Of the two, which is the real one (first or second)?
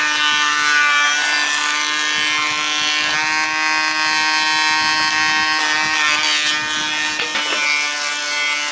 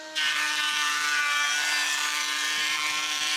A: first